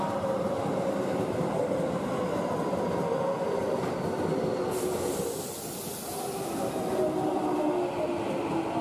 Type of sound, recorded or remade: recorded